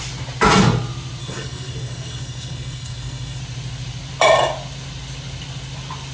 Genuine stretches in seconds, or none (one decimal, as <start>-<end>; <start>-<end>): 0.0-1.2; 3.4-6.1

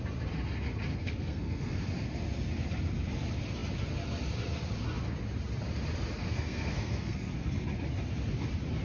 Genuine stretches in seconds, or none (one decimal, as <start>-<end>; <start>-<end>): 0.0-0.9; 1.8-6.2; 7.3-8.8

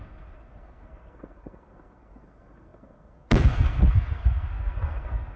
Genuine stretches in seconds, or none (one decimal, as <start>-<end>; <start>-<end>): none

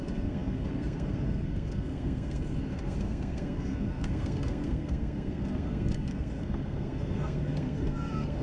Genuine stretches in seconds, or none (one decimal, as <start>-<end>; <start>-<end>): none

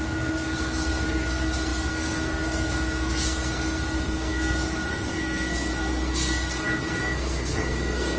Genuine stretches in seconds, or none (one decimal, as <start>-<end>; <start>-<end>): none

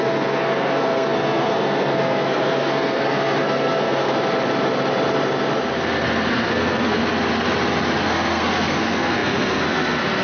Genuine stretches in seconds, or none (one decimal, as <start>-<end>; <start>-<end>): 4.1-6.3; 7.0-8.0